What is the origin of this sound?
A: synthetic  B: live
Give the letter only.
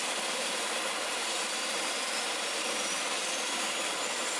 B